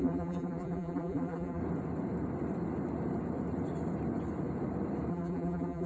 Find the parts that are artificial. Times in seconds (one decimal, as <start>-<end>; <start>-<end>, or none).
0.0-1.6; 5.1-5.9

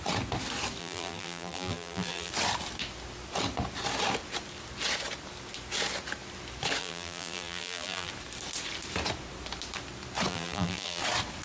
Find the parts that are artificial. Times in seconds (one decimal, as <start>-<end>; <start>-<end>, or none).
0.8-2.3; 6.8-8.1; 10.3-11.0

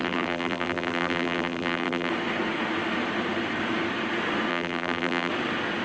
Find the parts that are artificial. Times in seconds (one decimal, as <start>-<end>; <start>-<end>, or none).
0.0-2.1; 4.5-5.3

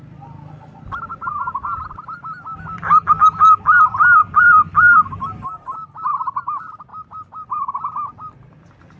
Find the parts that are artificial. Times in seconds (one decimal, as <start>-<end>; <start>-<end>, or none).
1.1-6.1

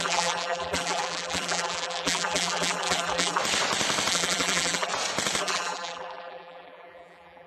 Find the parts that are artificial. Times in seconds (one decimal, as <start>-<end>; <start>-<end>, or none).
0.0-3.4; 4.1-4.9; 5.4-7.5

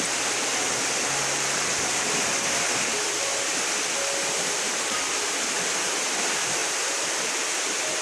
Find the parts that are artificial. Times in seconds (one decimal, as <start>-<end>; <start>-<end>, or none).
1.7-2.6; 3.3-4.3; 6.6-7.2

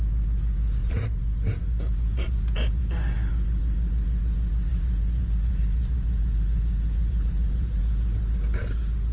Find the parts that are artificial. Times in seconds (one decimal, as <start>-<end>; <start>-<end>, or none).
0.8-3.0; 4.7-7.8